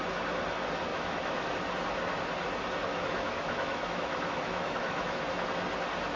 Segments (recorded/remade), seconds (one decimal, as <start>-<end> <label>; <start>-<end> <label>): 0.0-0.9 recorded; 0.9-1.5 remade; 1.5-2.9 recorded; 2.9-5.2 remade; 5.2-6.2 recorded